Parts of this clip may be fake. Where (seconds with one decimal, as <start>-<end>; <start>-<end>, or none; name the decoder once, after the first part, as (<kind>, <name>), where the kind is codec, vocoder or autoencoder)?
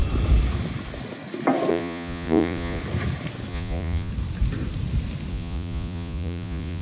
1.7-2.8 (vocoder, Vocos); 3.5-4.1; 5.3-6.8